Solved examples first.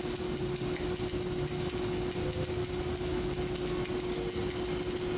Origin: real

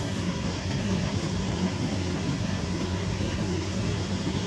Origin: fake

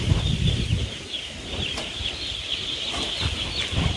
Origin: real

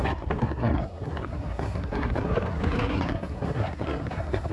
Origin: fake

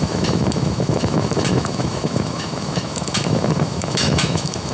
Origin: fake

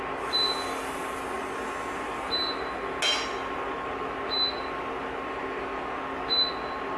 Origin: real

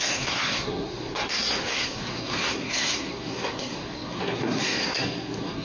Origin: fake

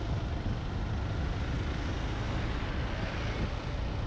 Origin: real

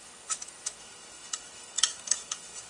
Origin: fake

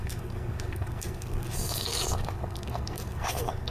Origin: fake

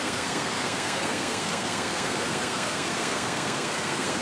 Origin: fake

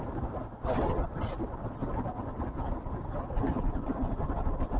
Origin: real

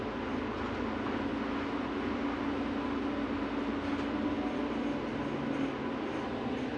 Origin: real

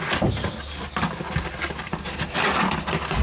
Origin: real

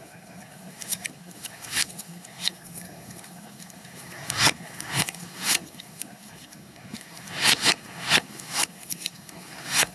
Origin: fake